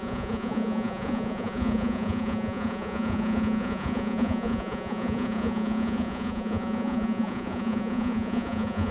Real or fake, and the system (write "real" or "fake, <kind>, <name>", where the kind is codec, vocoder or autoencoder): fake, vocoder, Vocos